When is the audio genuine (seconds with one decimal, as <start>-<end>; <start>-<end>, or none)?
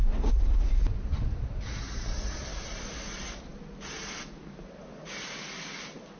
0.0-6.2